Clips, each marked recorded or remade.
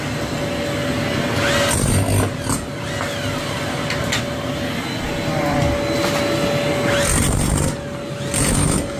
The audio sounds recorded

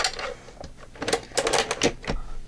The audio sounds recorded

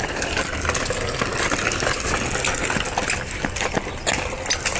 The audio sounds recorded